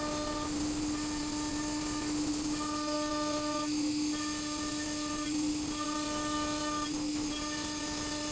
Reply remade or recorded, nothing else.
recorded